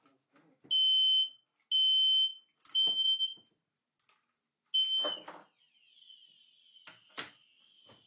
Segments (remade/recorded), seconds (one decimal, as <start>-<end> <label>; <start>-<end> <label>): 0.0-2.3 recorded; 2.3-3.7 remade; 3.7-8.1 recorded